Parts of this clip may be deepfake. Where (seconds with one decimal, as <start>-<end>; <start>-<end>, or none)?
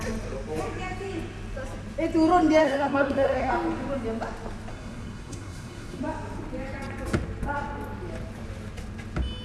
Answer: 2.6-3.5; 4.7-6.0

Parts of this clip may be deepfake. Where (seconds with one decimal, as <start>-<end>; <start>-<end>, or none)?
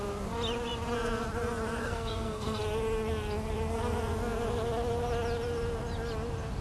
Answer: 1.8-2.6